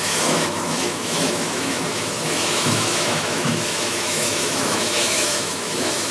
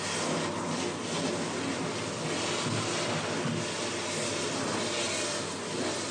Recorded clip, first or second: second